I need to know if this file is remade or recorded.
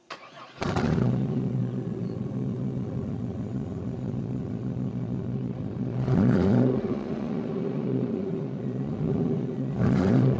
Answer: remade